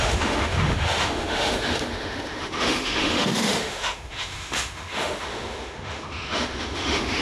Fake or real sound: fake